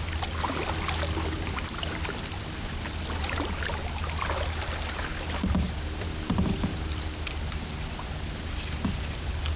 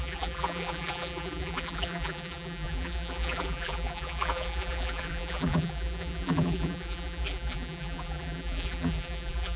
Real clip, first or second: first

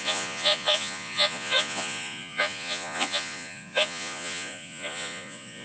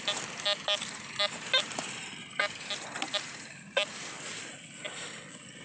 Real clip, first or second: second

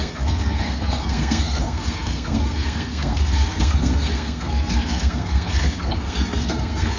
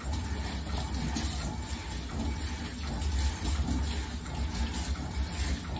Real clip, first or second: second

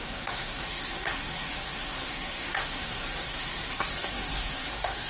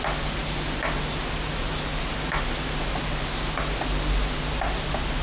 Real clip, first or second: second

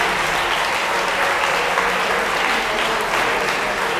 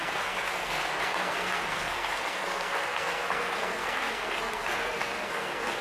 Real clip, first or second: first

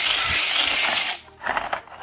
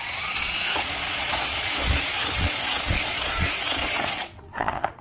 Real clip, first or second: first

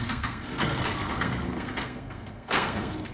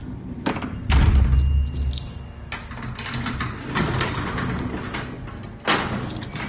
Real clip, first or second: second